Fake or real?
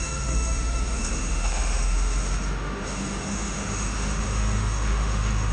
fake